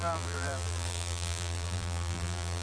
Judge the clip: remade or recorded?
remade